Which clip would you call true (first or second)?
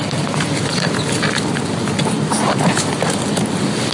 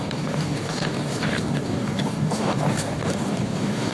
first